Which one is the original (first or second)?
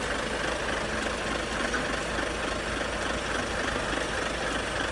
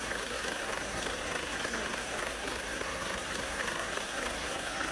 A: first